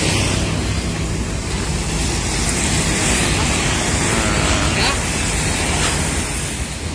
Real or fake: real